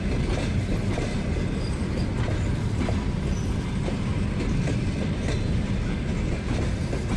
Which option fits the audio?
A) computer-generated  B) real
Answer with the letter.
B